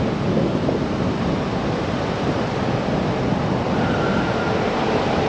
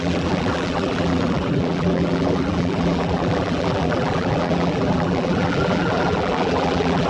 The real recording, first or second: first